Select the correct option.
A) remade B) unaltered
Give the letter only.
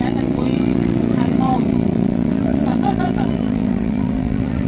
A